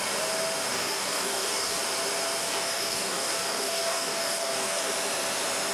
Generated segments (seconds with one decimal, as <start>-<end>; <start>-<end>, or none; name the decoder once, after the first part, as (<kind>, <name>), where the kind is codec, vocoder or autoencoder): 0.7-1.8 (codec, DAC); 2.4-4.9